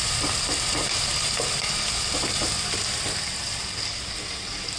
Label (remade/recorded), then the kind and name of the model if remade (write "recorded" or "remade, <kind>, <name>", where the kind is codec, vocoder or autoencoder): recorded